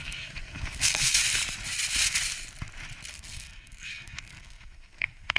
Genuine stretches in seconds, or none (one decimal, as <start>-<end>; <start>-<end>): 1.2-3.1